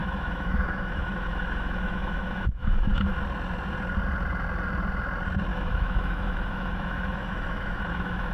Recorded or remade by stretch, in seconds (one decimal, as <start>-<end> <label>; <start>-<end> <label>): 0.0-3.2 remade; 3.2-5.5 recorded; 5.5-8.3 remade